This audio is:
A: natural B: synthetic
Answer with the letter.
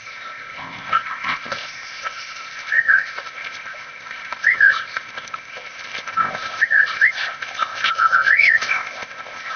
B